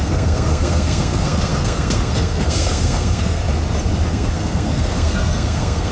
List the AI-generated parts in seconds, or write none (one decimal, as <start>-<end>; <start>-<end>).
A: 0.0-3.4; 4.1-5.9